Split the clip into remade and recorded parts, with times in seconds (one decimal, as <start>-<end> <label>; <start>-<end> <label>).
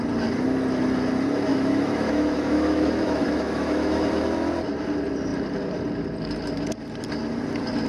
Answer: 0.0-1.5 recorded; 1.5-4.1 remade; 4.1-7.9 recorded